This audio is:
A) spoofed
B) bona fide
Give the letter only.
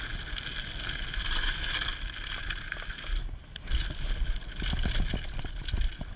B